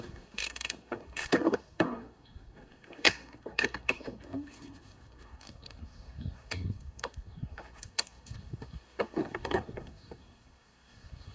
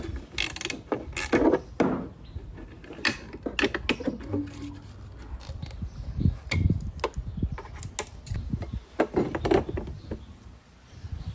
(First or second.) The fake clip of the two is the first